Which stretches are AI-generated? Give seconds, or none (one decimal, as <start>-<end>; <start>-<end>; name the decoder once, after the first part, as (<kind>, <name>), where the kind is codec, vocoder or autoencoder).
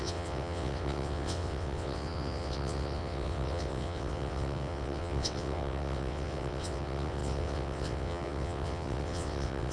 0.0-9.7 (vocoder, WaveNeXt)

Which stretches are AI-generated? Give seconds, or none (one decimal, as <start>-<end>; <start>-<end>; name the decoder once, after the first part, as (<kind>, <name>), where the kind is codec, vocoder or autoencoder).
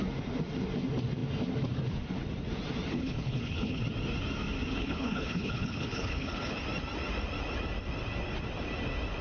2.9-3.8 (codec, HILCodec); 4.7-6.6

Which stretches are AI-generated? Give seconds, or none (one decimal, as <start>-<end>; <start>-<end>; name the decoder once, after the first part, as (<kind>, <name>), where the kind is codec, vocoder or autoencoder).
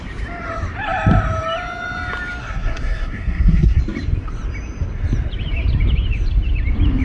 2.4-3.8 (codec, SNAC)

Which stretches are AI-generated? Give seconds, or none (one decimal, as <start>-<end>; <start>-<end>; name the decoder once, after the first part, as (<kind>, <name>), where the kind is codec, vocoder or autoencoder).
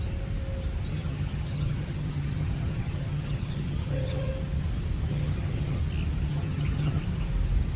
0.9-4.3 (vocoder, HiFi-GAN); 5.1-5.8; 6.3-7.0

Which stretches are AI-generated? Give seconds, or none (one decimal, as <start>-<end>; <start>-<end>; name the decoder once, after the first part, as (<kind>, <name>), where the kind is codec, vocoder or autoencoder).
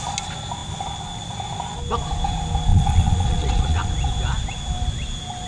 2.7-3.9 (vocoder, Vocos)